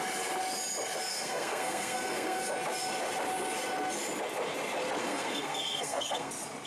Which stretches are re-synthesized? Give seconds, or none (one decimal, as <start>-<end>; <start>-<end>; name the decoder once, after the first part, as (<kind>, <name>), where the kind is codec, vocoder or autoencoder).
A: 1.1-2.5 (codec, SNAC); 5.0-6.3